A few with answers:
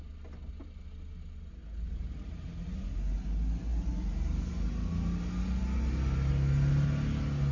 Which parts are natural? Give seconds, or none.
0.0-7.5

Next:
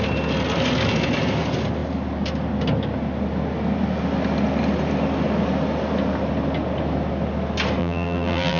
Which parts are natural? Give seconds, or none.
0.0-7.8

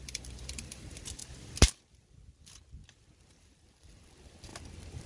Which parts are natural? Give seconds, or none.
1.2-3.2; 4.5-5.1